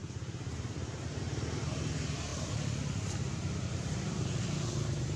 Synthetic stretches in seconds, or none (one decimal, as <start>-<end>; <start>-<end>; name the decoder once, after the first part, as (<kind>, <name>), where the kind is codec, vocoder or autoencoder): 0.0-1.2 (vocoder, BigVGAN v2); 2.3-4.4